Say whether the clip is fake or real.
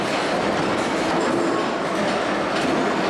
real